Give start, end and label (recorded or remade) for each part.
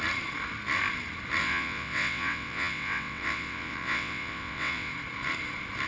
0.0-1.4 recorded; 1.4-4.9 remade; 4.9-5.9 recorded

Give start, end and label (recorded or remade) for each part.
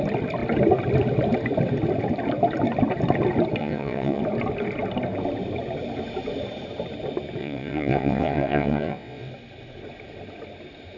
0.0-3.6 recorded; 3.6-4.2 remade; 4.2-7.4 recorded; 7.4-9.3 remade; 9.3-11.0 recorded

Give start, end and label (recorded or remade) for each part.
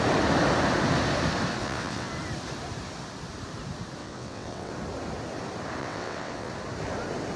0.0-1.6 recorded; 1.6-2.1 remade; 2.1-4.0 recorded; 4.0-4.7 remade; 4.7-5.8 recorded; 5.8-6.5 remade; 6.5-7.4 recorded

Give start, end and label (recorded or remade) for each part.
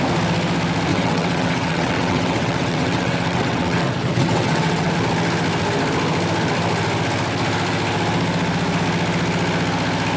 0.0-0.9 recorded; 0.9-4.9 remade; 4.9-10.2 recorded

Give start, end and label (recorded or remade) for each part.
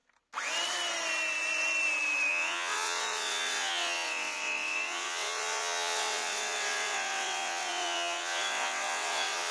0.0-2.3 recorded; 2.3-9.5 remade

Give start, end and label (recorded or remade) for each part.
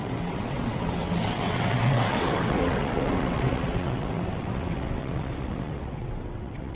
0.0-6.8 remade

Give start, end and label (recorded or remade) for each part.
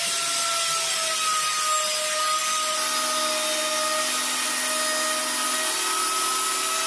0.0-6.9 recorded